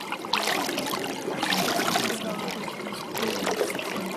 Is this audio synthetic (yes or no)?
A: no